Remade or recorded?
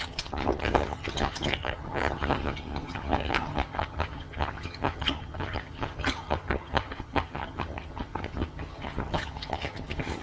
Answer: remade